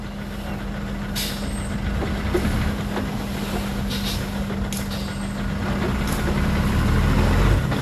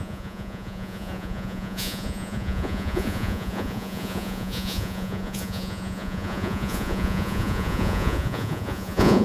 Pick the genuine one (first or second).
first